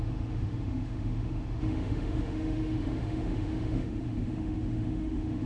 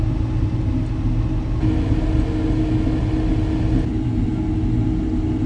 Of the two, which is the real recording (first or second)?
second